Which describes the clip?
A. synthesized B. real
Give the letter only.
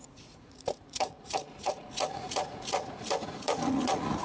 A